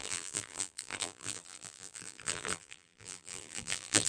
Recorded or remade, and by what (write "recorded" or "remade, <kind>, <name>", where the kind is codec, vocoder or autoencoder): remade, vocoder, BigVGAN v2